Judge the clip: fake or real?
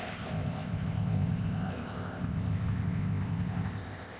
fake